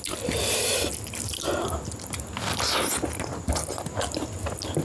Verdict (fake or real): real